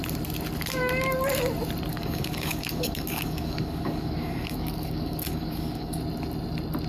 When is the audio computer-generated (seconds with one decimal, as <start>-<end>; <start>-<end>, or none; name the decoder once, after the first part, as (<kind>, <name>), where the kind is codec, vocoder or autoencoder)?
1.9-6.0 (codec, DAC)